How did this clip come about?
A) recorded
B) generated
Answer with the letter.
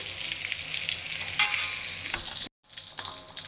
A